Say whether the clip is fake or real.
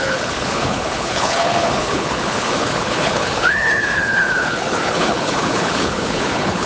fake